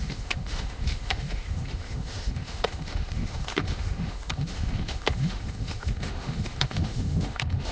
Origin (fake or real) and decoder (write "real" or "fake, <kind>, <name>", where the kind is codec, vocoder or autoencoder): fake, autoencoder, DAC-VAE